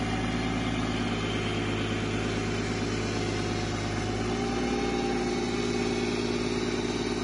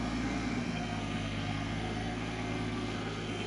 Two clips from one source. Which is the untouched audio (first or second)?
first